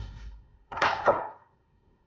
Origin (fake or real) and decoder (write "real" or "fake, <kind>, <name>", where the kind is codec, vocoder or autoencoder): fake, codec, SNAC